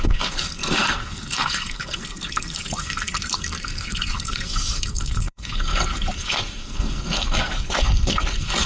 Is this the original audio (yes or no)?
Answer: no